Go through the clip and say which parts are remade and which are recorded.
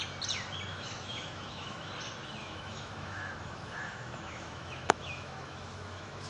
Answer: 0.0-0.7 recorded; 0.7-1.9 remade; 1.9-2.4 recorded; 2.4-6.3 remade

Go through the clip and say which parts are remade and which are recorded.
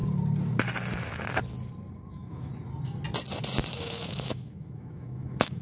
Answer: 0.0-2.1 recorded; 2.1-2.5 remade; 2.5-3.7 recorded; 3.7-5.6 remade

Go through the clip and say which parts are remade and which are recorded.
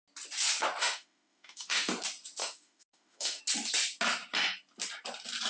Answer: 0.0-0.8 recorded; 0.8-1.9 remade; 1.9-2.4 recorded; 2.4-3.4 remade; 3.4-5.5 recorded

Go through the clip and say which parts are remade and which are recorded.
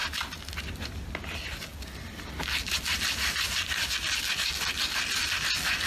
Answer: 0.0-5.9 recorded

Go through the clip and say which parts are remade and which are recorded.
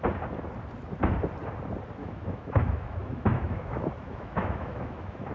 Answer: 0.0-2.0 recorded; 2.0-5.3 remade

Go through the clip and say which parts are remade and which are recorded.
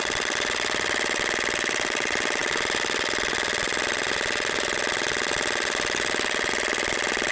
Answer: 0.0-7.3 recorded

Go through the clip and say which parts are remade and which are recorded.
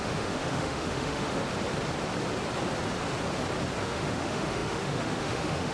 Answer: 0.0-1.4 remade; 1.4-3.8 recorded; 3.8-5.7 remade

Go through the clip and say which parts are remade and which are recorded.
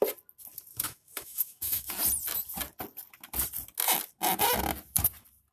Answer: 0.0-0.7 recorded; 0.7-1.9 remade; 1.9-5.5 recorded